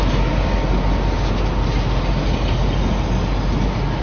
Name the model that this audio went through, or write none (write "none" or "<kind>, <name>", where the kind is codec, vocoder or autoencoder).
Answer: none